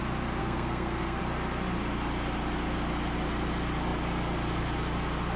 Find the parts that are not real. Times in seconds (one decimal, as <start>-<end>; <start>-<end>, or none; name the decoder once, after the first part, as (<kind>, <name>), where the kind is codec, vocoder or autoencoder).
0.4-1.2 (codec, SNAC)